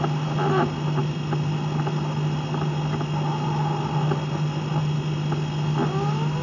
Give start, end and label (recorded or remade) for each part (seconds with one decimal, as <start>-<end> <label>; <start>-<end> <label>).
0.0-6.4 recorded